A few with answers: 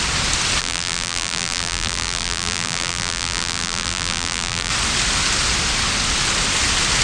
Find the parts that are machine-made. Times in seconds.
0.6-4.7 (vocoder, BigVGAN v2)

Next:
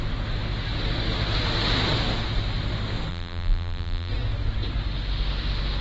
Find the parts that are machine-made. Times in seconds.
3.1-4.1 (vocoder, BigVGAN v2)

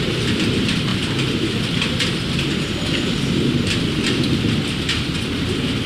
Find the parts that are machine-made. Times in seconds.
none

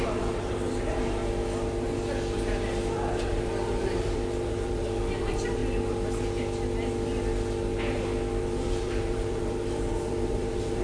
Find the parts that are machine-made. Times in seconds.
0.0-1.2 (vocoder, BigVGAN v2); 3.1-5.6; 8.4-10.8

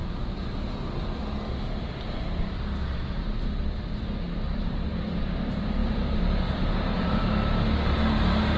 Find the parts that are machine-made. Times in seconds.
none

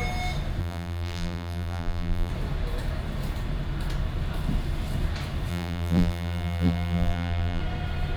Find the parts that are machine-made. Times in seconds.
0.6-2.3 (vocoder, BigVGAN v2); 5.5-7.6